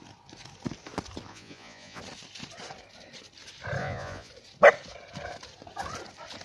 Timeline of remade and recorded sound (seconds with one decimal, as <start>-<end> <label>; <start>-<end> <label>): 0.0-1.3 recorded; 1.3-2.0 remade; 2.0-3.8 recorded; 3.8-4.3 remade; 4.3-6.4 recorded